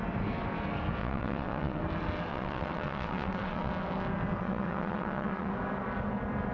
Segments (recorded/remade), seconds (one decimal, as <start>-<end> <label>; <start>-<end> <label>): 0.0-1.0 recorded; 1.0-1.8 remade; 1.8-2.3 recorded; 2.3-3.7 remade; 3.7-4.4 recorded; 4.4-5.5 remade; 5.5-6.5 recorded

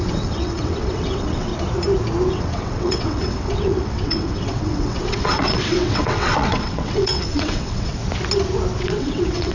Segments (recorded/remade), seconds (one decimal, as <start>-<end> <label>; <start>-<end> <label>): 0.0-1.5 remade; 1.5-2.3 recorded; 2.3-8.0 remade; 8.0-8.8 recorded; 8.8-9.5 remade

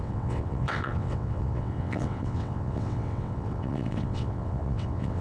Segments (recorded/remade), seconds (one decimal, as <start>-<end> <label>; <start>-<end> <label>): 0.0-5.2 remade

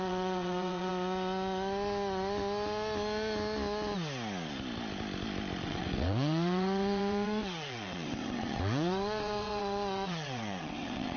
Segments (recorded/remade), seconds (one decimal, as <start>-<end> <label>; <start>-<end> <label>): 0.0-0.9 remade; 0.9-5.6 recorded; 5.6-11.2 remade

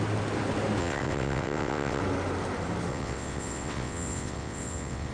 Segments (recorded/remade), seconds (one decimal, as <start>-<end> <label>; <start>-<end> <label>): 0.0-0.8 recorded; 0.8-2.0 remade; 2.0-2.9 recorded; 2.9-5.1 remade